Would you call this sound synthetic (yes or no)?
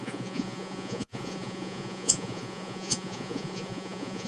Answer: yes